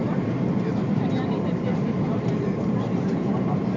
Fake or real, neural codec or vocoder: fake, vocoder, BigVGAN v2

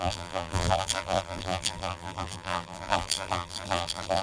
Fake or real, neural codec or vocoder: fake, vocoder, BigVGAN v2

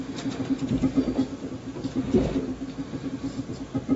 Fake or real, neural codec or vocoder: fake, vocoder, BigVGAN v2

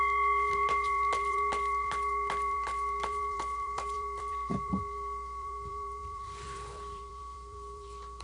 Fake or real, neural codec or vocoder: fake, vocoder, BigVGAN v2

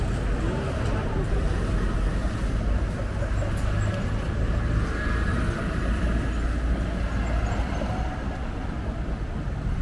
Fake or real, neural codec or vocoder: real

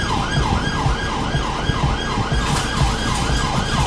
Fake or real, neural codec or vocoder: real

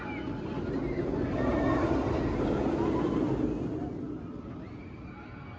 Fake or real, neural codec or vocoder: real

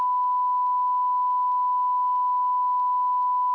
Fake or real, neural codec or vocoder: real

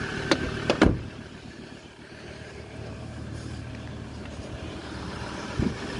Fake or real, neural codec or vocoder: fake, vocoder, BigVGAN v2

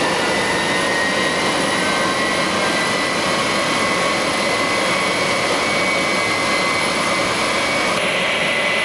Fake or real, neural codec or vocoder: real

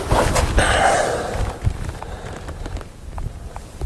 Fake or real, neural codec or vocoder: fake, vocoder, BigVGAN v2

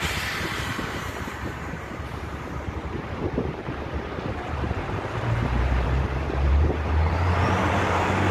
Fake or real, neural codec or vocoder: fake, vocoder, BigVGAN v2